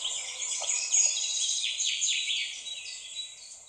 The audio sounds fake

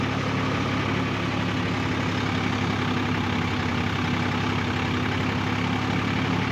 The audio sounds real